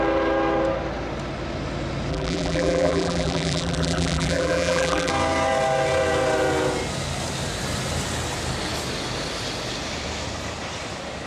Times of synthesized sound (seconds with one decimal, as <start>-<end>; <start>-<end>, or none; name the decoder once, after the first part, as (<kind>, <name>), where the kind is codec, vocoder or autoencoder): 2.1-5.1 (vocoder, BigVGAN v2)